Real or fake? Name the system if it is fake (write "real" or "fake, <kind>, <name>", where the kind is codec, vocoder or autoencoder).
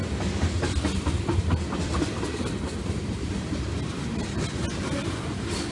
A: real